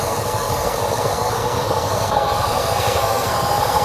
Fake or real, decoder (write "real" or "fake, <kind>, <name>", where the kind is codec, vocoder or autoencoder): fake, codec, SNAC